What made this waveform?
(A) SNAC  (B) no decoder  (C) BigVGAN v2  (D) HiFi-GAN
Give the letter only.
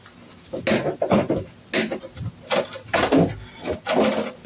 B